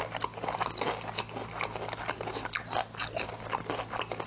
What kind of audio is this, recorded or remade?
recorded